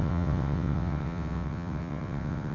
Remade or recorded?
remade